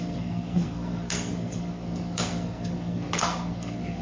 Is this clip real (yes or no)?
no